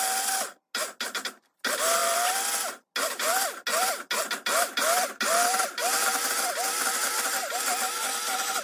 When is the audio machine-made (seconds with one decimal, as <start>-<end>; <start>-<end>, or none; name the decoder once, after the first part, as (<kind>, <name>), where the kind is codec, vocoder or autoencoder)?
none